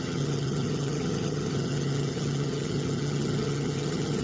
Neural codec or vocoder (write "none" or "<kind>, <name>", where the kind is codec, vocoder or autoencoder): vocoder, HiFi-GAN